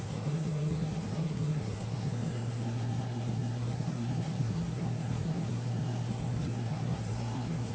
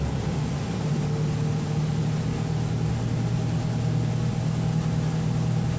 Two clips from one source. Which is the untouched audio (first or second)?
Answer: second